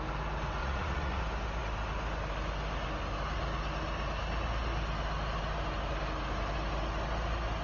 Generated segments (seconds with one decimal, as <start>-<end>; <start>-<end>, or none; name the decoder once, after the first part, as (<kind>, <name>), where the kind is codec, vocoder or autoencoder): 0.6-1.2 (vocoder, Vocos)